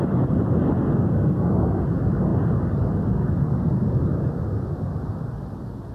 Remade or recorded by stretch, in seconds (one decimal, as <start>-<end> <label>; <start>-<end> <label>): 0.0-1.0 recorded; 1.0-1.9 remade; 1.9-5.9 recorded